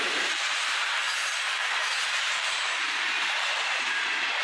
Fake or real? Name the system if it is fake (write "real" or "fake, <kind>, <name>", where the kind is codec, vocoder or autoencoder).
fake, vocoder, BigVGAN v2